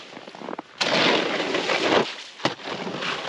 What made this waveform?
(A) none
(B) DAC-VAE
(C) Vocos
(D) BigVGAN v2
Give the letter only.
A